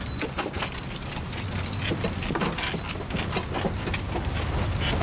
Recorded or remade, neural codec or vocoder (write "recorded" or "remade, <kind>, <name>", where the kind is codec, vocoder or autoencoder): recorded